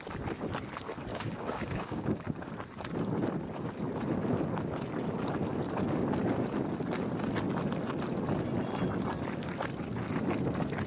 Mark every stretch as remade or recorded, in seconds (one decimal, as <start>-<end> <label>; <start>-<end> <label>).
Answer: 0.0-1.1 recorded; 1.1-2.5 remade; 2.5-10.9 recorded